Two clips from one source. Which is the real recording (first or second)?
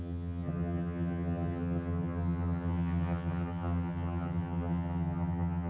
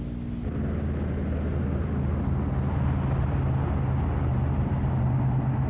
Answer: second